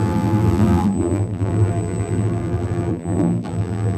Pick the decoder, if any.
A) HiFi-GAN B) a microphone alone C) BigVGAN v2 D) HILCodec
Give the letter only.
C